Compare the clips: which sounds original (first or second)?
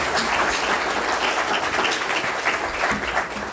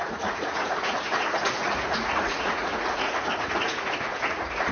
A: first